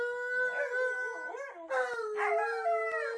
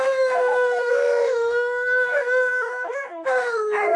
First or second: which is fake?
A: second